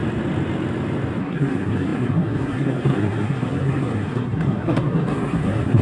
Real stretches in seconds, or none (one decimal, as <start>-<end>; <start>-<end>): 0.0-1.2